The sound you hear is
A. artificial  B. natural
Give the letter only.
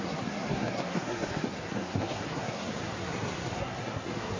A